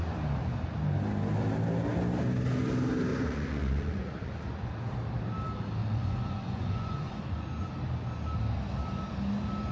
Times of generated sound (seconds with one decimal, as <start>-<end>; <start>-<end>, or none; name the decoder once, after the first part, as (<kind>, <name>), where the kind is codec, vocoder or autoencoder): 3.1-4.8 (vocoder, Vocos); 5.8-7.6